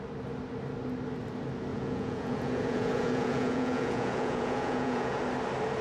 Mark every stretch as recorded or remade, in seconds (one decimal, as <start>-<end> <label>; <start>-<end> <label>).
0.0-1.7 recorded; 1.7-5.2 remade; 5.2-5.8 recorded